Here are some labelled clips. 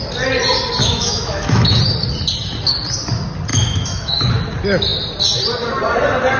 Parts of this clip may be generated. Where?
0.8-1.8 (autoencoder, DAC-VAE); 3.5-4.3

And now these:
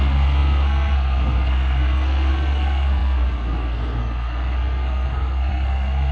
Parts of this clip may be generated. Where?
0.0-6.1 (codec, SNAC)

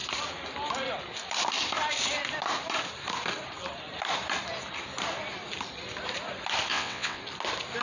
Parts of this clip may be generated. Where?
6.7-7.2 (vocoder, WaveNeXt)

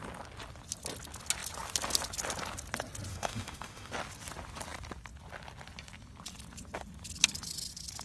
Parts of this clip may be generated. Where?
3.1-3.9 (autoencoder, DAC-VAE)

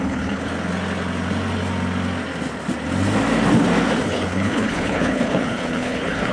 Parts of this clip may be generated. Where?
0.0-0.5 (codec, HILCodec); 4.0-6.3